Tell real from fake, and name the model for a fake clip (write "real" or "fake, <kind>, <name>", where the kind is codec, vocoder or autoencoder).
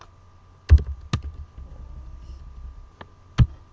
real